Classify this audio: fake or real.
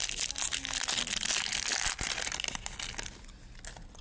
real